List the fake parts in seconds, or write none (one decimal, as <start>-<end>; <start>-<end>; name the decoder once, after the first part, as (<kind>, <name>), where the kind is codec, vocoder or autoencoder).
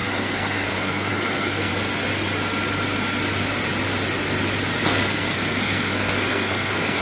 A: 0.0-1.7 (codec, SNAC); 4.8-7.0